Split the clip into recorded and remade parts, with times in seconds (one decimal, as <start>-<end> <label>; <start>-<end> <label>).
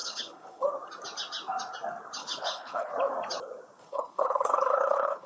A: 0.0-0.7 remade; 0.7-2.2 recorded; 2.2-2.9 remade; 2.9-3.8 recorded; 3.8-5.3 remade